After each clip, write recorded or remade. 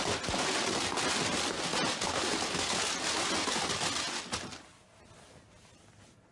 recorded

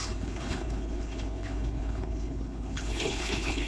remade